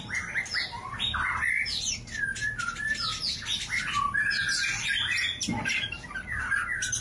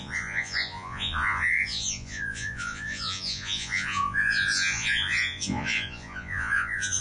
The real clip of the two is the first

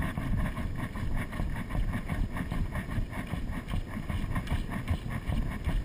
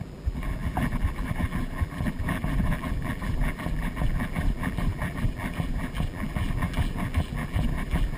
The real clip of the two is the first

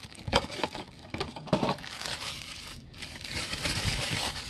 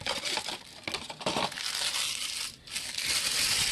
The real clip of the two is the second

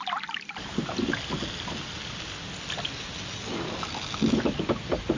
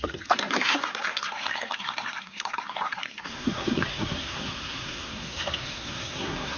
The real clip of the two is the first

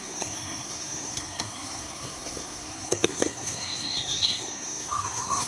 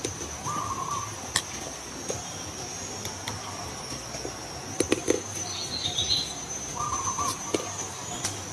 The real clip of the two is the second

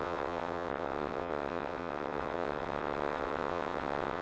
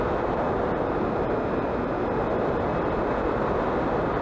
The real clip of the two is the second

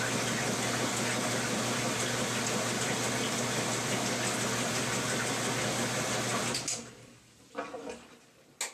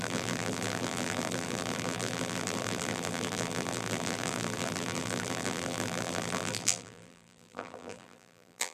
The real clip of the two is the first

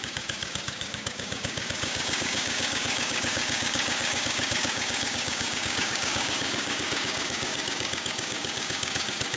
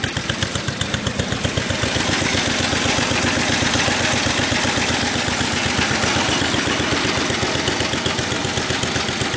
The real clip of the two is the second